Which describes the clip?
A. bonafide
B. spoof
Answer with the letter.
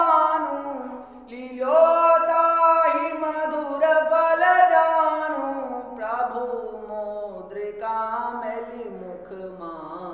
A